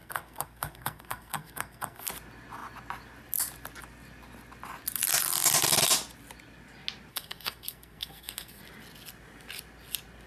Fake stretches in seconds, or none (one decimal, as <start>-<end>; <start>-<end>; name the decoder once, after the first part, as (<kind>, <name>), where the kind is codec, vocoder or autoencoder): 0.0-2.1 (codec, SNAC); 7.1-8.6